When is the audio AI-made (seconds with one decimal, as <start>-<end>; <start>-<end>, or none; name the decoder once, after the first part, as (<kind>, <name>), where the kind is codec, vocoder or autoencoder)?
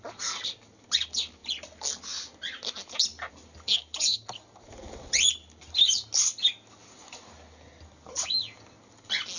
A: none